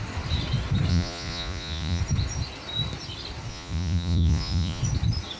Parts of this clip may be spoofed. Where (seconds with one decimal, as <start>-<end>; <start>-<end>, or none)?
0.9-2.0; 3.5-4.8